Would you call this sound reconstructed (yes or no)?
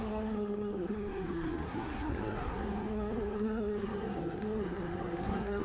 yes